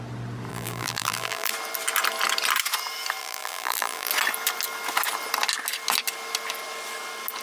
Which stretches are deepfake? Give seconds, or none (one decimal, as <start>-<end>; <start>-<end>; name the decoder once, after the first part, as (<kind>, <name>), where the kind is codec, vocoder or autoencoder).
0.5-1.5 (vocoder, BigVGAN v2); 3.2-4.1